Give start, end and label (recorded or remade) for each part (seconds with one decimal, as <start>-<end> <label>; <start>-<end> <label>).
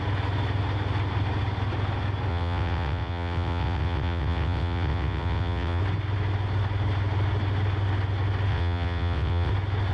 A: 0.0-2.3 recorded; 2.3-5.8 remade; 5.8-8.5 recorded; 8.5-9.5 remade; 9.5-9.9 recorded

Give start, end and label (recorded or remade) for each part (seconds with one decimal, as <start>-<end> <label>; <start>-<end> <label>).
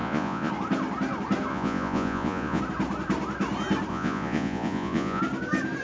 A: 0.0-0.5 remade; 0.5-1.5 recorded; 1.5-2.6 remade; 2.6-3.9 recorded; 3.9-5.2 remade; 5.2-5.8 recorded